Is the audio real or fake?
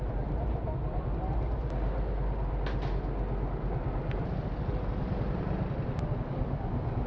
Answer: real